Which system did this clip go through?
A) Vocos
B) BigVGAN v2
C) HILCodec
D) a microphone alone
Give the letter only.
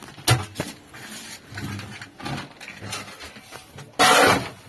D